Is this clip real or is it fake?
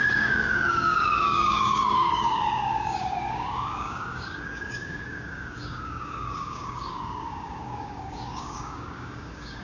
fake